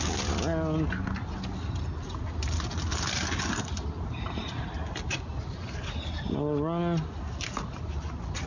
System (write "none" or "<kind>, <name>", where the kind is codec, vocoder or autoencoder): none